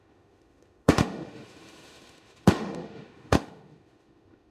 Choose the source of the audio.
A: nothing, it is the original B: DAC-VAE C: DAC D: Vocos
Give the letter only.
B